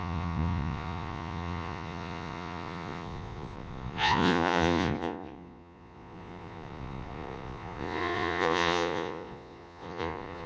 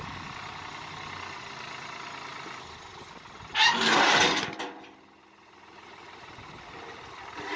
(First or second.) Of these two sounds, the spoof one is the first